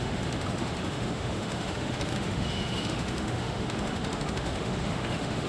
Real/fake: fake